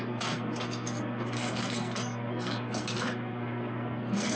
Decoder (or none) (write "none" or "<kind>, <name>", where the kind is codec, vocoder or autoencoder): codec, SNAC